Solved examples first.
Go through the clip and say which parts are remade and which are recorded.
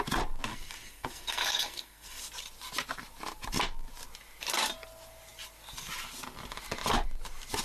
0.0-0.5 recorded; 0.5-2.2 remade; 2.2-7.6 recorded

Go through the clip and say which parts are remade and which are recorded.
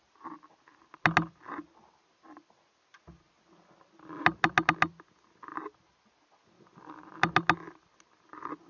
0.0-8.7 recorded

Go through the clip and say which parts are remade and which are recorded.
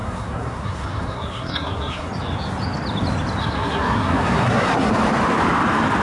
0.0-2.1 remade; 2.1-3.4 recorded; 3.4-4.9 remade; 4.9-6.0 recorded